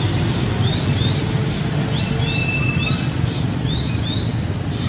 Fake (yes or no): yes